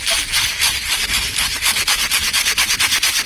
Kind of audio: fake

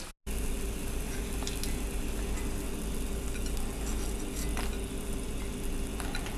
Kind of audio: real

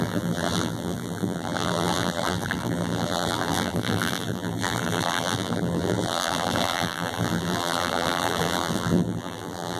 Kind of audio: fake